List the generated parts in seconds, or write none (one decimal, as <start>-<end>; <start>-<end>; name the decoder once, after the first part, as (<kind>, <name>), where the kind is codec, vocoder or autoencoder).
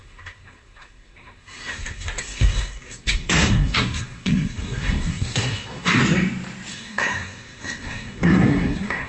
0.0-6.0 (codec, SNAC); 6.7-9.1